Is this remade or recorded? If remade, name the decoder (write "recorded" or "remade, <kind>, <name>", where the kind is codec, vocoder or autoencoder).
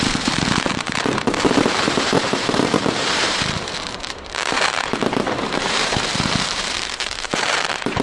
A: remade, vocoder, BigVGAN v2